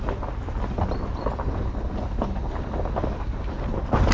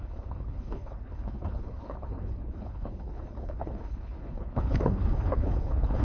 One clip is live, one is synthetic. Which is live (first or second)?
first